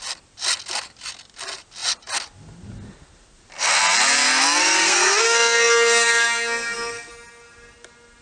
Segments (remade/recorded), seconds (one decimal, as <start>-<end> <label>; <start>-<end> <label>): 0.0-4.6 recorded; 4.6-7.1 remade; 7.1-8.2 recorded